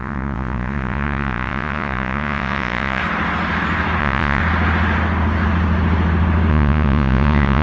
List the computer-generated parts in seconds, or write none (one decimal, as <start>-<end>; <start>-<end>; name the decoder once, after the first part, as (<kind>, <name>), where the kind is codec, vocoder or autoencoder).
0.0-3.0 (vocoder, Vocos); 4.0-4.4; 6.5-7.6